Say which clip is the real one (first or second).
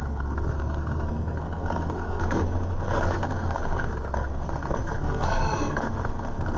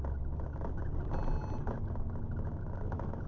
second